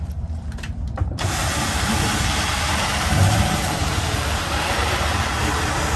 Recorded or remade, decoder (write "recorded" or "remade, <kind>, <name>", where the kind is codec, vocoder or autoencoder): remade, vocoder, BigVGAN v2